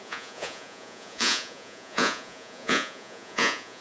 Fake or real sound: fake